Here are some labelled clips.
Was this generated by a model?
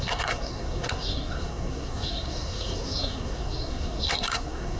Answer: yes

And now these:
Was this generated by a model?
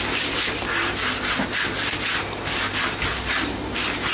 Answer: no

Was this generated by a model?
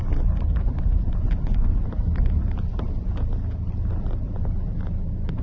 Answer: no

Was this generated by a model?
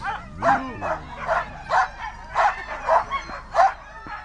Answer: no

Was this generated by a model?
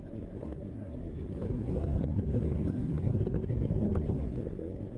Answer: yes